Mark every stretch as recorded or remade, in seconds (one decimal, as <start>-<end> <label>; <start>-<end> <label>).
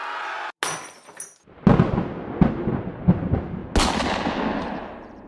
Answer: 0.0-5.3 recorded